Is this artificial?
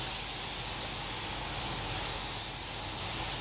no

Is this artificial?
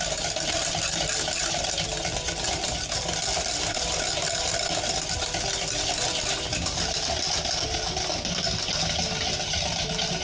no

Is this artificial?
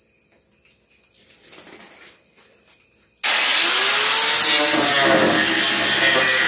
no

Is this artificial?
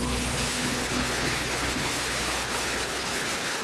yes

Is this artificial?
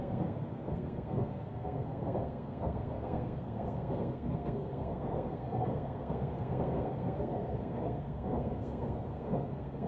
yes